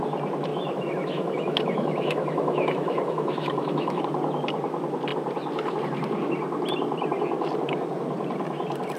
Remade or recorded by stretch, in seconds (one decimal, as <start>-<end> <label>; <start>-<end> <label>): 0.0-0.5 recorded; 0.5-4.0 remade; 4.0-9.0 recorded